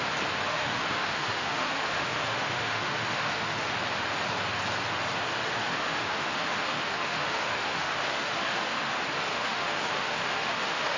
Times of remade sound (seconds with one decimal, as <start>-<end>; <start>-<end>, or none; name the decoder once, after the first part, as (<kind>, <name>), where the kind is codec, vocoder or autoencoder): 0.5-3.7 (autoencoder, DAC-VAE); 5.6-8.9; 9.3-11.0